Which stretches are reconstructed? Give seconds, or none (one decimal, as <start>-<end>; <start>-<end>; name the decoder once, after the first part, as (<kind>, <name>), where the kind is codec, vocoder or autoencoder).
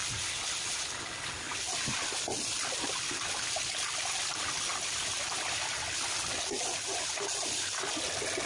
none